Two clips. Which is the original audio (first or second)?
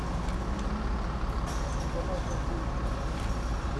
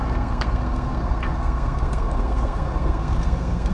first